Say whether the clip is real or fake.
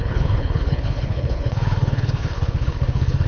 fake